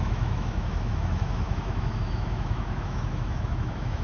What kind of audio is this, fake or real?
fake